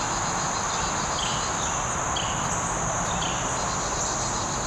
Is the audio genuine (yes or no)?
yes